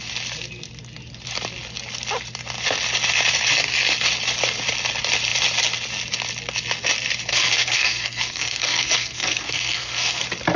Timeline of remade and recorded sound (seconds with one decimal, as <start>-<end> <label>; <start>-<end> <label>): 0.0-7.3 recorded; 7.3-10.2 remade; 10.2-10.6 recorded